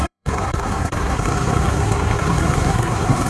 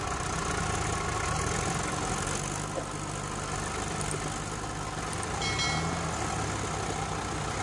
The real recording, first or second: second